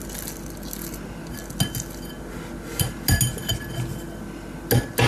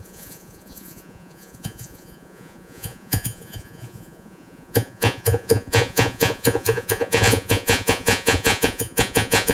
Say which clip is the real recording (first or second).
first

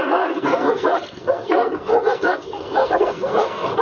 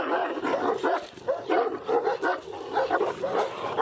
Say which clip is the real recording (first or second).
second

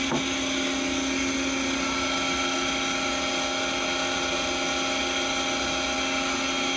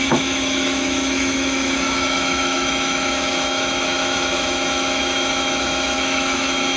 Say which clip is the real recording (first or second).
first